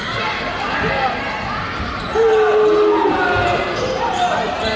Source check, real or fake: real